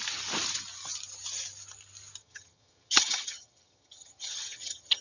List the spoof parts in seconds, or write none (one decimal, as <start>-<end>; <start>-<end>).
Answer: 2.2-5.0